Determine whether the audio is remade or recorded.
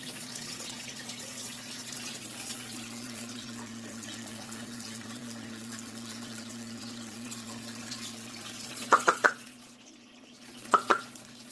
remade